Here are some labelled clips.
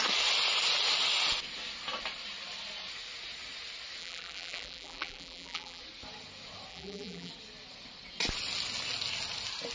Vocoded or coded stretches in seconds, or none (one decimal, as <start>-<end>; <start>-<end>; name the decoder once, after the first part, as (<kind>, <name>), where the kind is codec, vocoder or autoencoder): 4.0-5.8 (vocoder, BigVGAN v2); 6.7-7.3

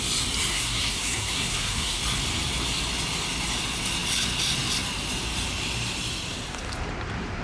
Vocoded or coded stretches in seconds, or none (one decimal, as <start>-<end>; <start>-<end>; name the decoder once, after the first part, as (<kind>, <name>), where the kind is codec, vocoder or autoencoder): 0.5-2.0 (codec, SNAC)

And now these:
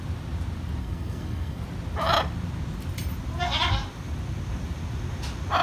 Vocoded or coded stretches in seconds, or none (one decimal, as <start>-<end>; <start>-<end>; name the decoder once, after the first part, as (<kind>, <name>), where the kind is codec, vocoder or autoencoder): 0.8-1.6 (codec, SNAC)

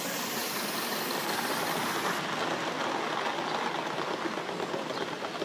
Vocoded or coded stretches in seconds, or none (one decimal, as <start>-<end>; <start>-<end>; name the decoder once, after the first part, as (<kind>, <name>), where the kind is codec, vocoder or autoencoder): none

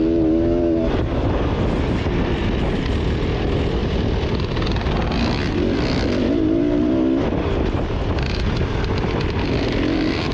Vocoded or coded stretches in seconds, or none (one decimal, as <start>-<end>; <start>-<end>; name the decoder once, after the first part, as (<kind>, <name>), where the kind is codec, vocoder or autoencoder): none

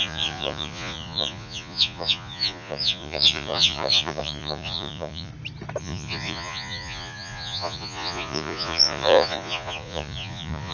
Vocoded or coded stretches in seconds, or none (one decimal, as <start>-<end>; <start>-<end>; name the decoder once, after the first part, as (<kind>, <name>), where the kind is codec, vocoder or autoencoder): 0.0-5.3 (vocoder, Vocos); 5.8-10.7